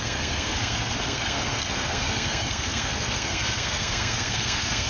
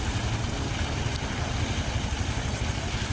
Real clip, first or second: second